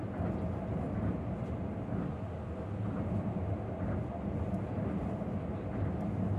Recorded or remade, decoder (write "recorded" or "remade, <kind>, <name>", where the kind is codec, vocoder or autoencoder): recorded